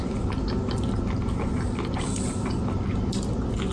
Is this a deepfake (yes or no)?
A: no